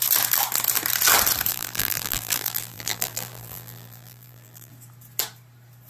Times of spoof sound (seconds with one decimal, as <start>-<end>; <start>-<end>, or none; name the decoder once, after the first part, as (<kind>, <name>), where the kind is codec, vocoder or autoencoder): 1.5-4.7 (vocoder, BigVGAN v2)

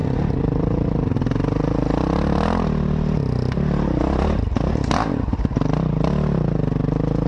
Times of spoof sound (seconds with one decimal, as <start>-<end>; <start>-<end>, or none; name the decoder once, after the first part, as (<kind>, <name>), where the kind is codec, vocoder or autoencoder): none

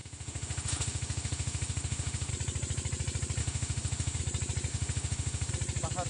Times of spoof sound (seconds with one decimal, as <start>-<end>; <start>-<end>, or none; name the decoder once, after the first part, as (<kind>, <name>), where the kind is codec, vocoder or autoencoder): 0.0-2.3 (autoencoder, DAC-VAE); 3.4-4.2; 4.7-5.5

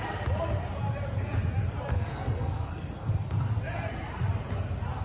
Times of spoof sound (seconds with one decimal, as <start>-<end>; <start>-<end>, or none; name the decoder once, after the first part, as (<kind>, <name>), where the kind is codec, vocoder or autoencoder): 1.9-3.5 (codec, SNAC)